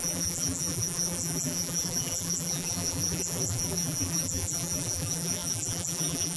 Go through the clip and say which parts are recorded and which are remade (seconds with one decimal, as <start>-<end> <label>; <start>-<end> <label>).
0.0-6.4 remade